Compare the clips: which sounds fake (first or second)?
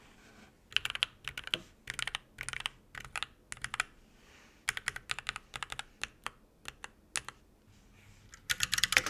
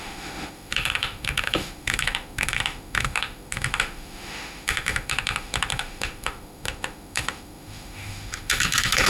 second